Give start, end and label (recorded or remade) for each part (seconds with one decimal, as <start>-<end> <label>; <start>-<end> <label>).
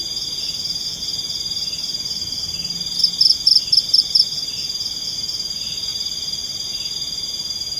0.0-5.9 recorded; 5.9-6.7 remade; 6.7-7.8 recorded